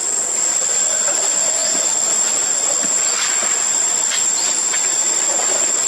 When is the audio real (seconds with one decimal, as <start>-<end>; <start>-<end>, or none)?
0.0-1.6; 2.8-3.4; 5.4-5.9